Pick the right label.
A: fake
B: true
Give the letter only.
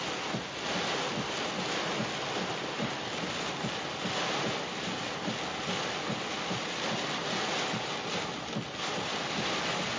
B